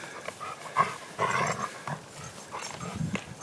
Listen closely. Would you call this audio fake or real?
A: real